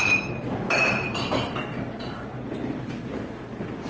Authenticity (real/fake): real